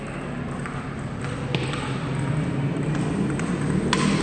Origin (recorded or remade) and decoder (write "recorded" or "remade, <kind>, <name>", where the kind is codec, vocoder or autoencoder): recorded